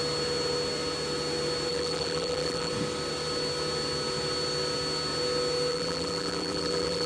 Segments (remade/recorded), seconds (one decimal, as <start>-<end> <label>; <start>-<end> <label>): 0.0-1.7 recorded; 1.7-2.7 remade; 2.7-5.7 recorded; 5.7-7.1 remade